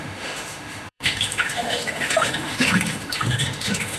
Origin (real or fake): fake